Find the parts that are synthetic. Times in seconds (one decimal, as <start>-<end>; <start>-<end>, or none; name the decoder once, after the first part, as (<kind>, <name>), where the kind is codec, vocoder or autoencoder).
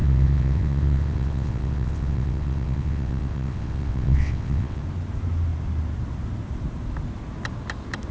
0.0-4.8 (vocoder, WaveNeXt)